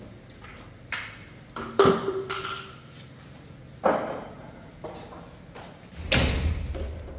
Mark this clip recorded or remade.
recorded